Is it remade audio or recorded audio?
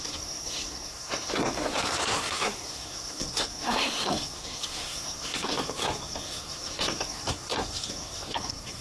remade